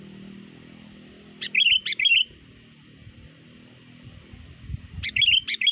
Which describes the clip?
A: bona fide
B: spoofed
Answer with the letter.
A